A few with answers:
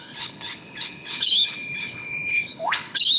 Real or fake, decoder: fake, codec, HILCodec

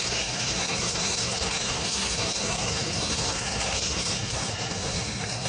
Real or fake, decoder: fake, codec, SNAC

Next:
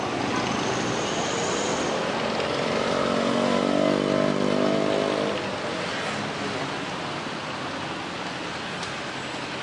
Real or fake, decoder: real